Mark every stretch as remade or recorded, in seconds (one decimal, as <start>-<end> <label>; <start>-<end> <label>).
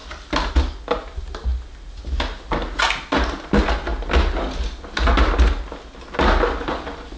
0.0-7.2 recorded